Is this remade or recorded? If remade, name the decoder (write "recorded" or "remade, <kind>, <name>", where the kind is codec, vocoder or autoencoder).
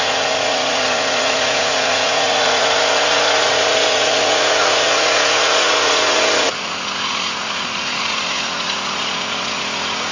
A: remade, vocoder, Vocos